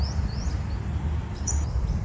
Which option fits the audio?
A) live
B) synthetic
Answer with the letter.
B